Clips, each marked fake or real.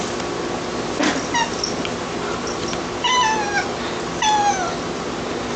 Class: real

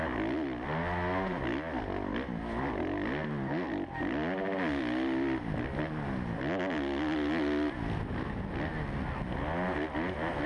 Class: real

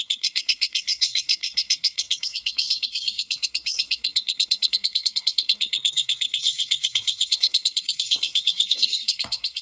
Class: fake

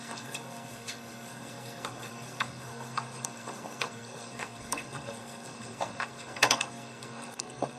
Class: fake